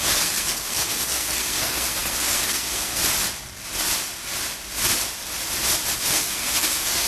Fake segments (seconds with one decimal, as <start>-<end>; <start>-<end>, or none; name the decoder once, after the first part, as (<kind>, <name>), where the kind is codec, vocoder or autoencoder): 0.0-3.0 (codec, SNAC); 6.0-7.1